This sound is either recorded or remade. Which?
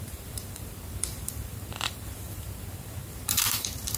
remade